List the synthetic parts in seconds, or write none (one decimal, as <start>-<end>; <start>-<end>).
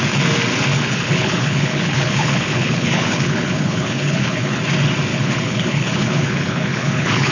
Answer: 0.7-4.6; 5.1-7.3